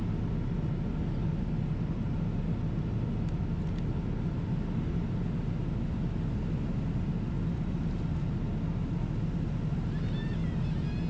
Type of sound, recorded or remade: recorded